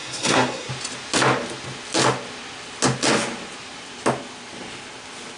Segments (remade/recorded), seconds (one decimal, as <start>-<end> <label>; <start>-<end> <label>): 0.0-0.7 remade; 0.7-5.4 recorded